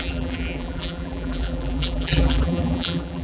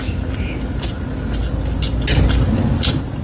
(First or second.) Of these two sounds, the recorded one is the second